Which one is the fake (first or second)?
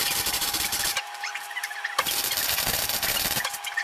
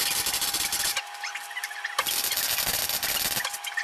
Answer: first